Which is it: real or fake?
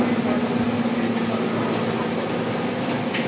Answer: real